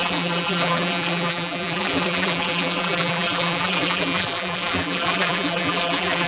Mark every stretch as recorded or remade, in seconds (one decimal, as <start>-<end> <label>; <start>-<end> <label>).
0.0-6.3 remade